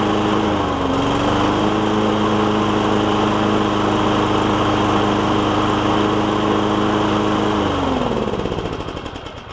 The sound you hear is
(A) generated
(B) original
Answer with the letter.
B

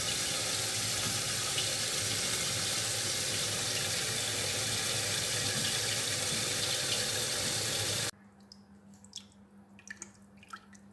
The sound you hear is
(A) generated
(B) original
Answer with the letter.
B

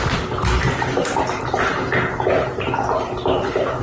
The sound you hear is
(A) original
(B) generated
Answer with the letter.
A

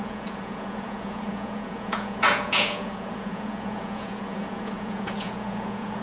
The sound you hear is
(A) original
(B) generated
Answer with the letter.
B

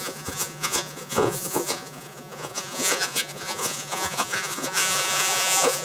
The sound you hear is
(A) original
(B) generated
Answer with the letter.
B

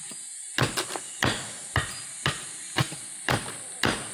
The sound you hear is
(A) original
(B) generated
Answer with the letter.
A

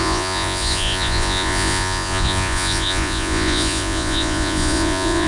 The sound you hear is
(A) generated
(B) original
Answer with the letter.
A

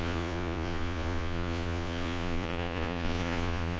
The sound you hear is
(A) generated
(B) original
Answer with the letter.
A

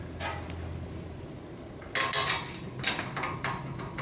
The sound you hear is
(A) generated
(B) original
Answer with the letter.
B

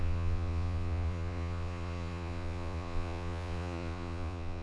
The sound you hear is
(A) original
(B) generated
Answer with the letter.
B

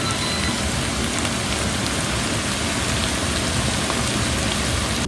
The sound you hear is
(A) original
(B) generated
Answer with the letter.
A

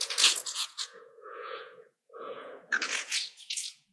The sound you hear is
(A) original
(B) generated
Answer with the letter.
B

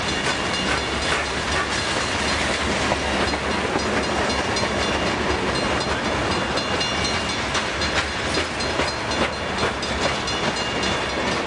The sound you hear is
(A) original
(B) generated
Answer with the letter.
A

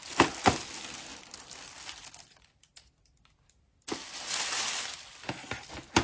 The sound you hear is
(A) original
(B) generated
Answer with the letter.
A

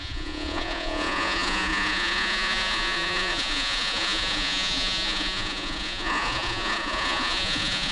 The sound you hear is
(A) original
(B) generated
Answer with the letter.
B